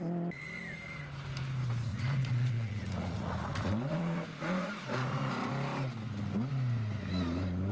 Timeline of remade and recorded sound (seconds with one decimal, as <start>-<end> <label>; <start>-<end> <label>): 0.0-1.9 recorded; 1.9-5.5 remade; 5.5-7.7 recorded